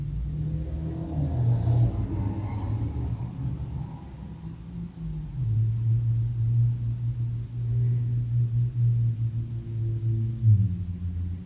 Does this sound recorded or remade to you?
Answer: recorded